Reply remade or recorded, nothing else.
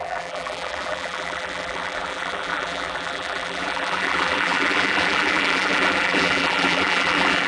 remade